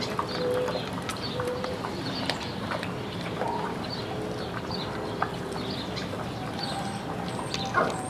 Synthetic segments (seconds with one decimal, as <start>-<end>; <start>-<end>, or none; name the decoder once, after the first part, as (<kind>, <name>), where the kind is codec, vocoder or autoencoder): 1.1-4.0 (vocoder, BigVGAN v2)